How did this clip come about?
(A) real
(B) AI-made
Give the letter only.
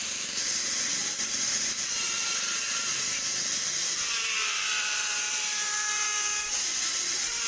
B